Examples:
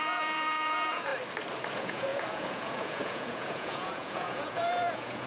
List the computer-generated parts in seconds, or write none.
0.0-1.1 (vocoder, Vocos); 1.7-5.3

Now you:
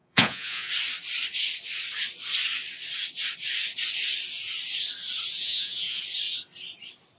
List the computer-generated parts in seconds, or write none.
0.0-0.7 (vocoder, Vocos); 5.4-6.0

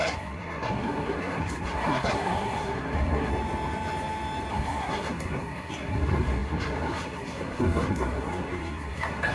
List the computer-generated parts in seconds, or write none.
0.0-3.3 (codec, SNAC); 4.5-9.3

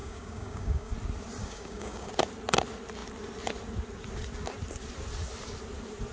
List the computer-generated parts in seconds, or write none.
0.0-0.9 (codec, DAC); 1.4-2.1

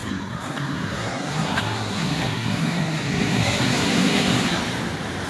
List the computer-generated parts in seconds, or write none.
0.0-4.6 (codec, SNAC)